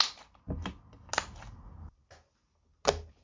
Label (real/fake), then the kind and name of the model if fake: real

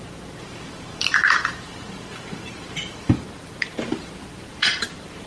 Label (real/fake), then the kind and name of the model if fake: fake, vocoder, BigVGAN v2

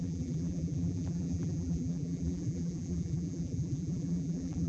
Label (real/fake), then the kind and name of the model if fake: fake, vocoder, BigVGAN v2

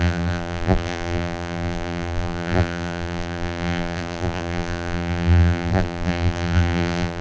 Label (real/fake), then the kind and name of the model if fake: fake, vocoder, BigVGAN v2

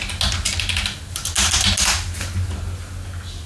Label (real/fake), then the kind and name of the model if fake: real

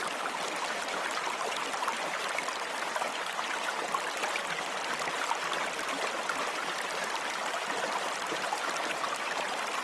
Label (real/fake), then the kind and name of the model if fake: real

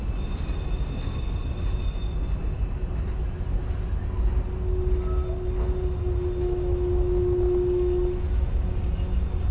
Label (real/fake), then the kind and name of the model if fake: real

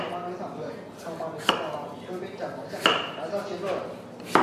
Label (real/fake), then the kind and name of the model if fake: real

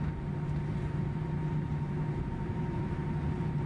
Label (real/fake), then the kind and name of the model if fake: fake, vocoder, BigVGAN v2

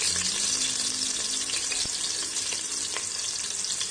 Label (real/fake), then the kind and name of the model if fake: real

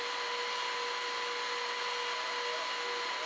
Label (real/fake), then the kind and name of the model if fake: real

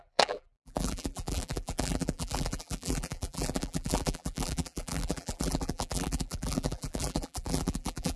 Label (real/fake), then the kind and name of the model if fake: fake, vocoder, BigVGAN v2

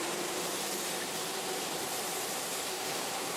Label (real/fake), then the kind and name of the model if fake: fake, vocoder, BigVGAN v2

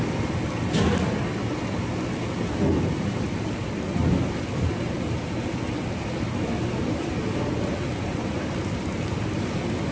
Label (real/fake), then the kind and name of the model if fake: fake, vocoder, BigVGAN v2